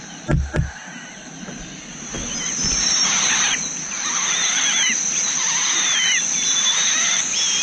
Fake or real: real